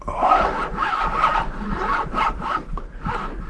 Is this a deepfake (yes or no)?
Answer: no